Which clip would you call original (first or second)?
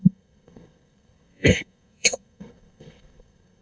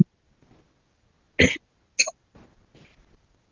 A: second